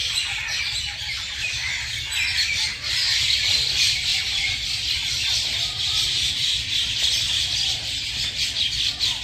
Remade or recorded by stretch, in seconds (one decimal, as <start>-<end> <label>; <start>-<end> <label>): 0.0-9.2 recorded